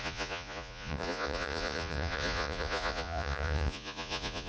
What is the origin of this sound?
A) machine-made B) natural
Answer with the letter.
A